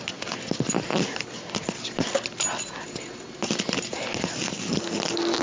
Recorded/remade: recorded